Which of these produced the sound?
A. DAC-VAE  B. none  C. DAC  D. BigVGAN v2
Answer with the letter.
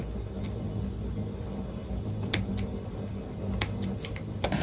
B